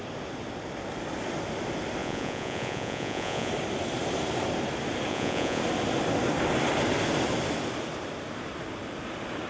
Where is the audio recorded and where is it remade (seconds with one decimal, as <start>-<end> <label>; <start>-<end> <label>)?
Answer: 0.0-2.0 recorded; 2.0-3.5 remade; 3.5-5.1 recorded; 5.1-5.6 remade; 5.6-9.5 recorded